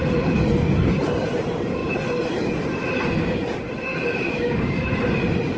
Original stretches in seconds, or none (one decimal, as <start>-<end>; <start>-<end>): 0.6-3.9; 5.1-5.6